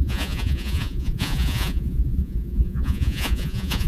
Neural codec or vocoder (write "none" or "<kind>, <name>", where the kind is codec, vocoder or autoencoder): vocoder, Vocos